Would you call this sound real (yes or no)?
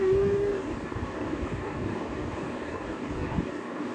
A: no